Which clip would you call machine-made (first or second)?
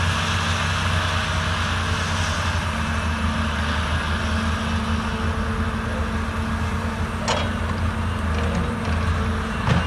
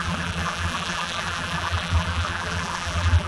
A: second